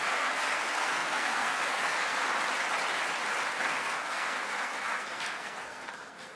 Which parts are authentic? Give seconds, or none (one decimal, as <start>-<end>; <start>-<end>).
2.2-3.5